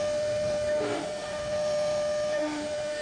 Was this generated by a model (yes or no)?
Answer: yes